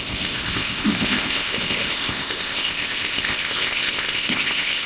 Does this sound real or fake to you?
fake